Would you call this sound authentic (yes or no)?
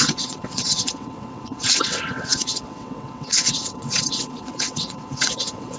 no